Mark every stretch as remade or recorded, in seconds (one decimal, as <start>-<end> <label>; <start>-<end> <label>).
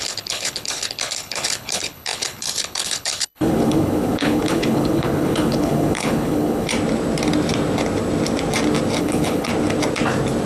0.0-6.7 remade; 6.7-9.0 recorded; 9.0-9.5 remade; 9.5-10.5 recorded